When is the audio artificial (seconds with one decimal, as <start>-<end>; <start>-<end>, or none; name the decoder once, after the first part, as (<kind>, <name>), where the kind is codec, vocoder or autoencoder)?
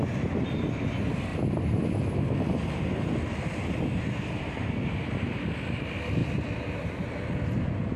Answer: 6.2-7.2 (vocoder, BigVGAN v2)